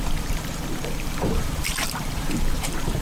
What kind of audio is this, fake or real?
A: fake